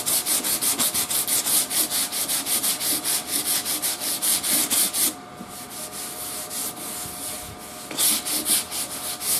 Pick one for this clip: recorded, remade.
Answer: recorded